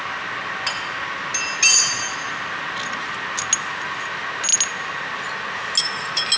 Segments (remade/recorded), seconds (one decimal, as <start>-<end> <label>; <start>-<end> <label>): 0.0-6.4 recorded